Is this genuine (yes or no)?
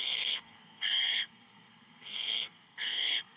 no